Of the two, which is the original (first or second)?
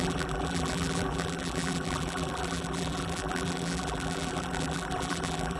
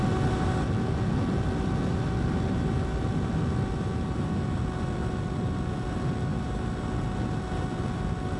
second